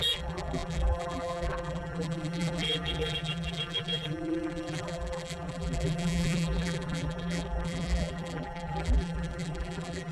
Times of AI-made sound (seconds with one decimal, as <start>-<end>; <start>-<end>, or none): 0.0-10.1